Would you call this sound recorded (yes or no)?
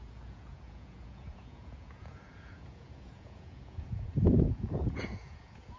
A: no